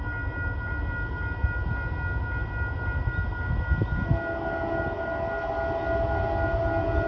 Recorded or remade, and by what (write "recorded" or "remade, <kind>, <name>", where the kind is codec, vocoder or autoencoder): recorded